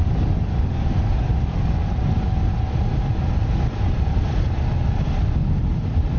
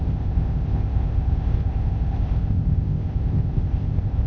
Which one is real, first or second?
first